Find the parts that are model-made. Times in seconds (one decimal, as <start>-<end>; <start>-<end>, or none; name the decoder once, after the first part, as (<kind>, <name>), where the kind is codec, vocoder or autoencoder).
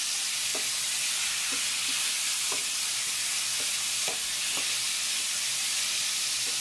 0.0-0.5 (vocoder, BigVGAN v2); 1.5-2.6; 5.2-6.6